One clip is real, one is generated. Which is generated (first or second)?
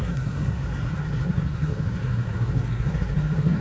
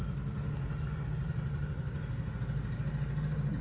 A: first